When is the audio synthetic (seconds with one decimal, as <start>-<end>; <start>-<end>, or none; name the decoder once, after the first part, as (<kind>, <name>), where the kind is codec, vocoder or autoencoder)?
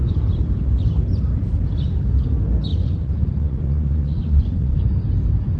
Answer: 2.7-4.8 (vocoder, Vocos)